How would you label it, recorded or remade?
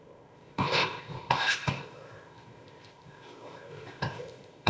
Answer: remade